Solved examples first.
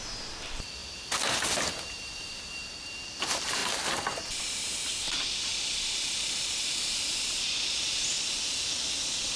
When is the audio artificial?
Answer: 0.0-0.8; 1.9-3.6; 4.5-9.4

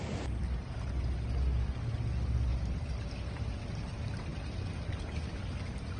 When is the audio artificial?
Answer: 2.5-3.1; 4.3-5.3